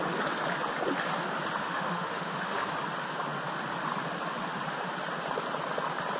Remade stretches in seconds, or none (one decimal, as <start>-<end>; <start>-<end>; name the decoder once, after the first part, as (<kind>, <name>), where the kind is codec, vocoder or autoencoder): 1.6-2.7 (autoencoder, DAC-VAE)